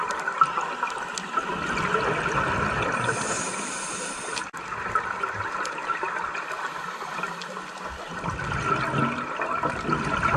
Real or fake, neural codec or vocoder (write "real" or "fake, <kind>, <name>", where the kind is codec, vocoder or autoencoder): real